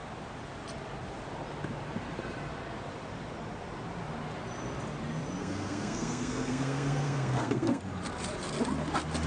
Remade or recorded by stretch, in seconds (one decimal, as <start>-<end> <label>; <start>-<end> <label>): 0.0-5.4 recorded; 5.4-7.8 remade; 7.8-9.3 recorded